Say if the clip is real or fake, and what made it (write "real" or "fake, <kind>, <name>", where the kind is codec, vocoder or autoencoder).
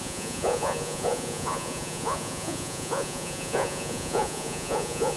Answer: fake, vocoder, Vocos